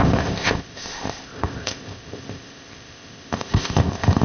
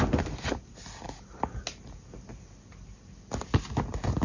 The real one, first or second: second